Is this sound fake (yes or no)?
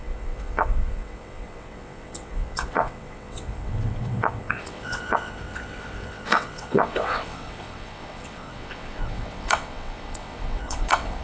yes